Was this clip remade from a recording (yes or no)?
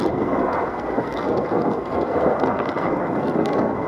yes